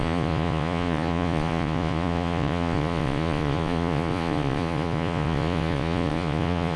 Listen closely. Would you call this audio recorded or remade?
remade